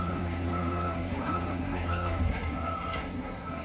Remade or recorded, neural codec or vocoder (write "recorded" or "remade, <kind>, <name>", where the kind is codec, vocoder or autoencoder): remade, codec, SNAC